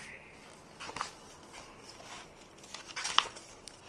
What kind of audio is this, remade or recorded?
recorded